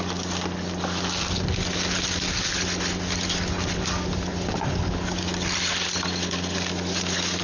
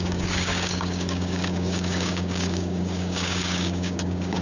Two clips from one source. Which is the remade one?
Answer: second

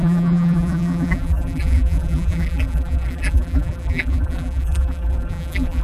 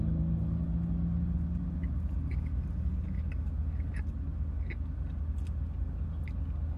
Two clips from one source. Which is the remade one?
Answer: first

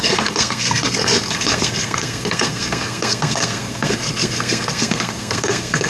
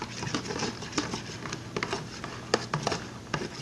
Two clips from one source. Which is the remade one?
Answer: first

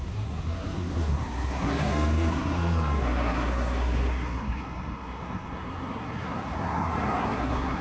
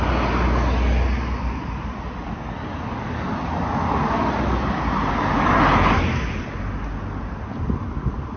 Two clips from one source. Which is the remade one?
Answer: first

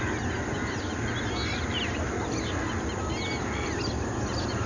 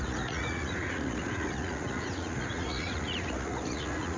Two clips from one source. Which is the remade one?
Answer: second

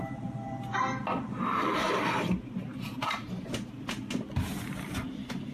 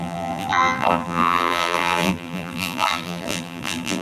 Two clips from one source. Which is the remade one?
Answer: second